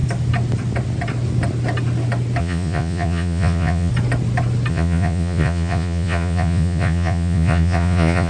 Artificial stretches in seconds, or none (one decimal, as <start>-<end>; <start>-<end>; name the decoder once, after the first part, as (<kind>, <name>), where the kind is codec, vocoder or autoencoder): 2.4-3.9 (vocoder, Vocos); 4.7-8.3